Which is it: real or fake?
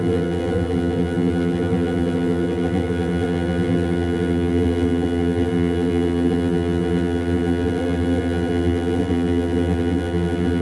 fake